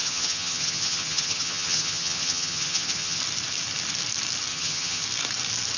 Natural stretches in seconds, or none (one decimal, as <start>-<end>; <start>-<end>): 3.2-4.5; 5.0-5.8